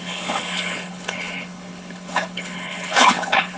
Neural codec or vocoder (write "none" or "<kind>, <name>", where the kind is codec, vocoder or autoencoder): codec, HILCodec